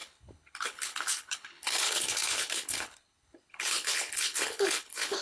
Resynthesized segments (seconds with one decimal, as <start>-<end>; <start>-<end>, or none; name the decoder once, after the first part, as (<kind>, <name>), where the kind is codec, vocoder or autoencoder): 0.0-5.2 (codec, HILCodec)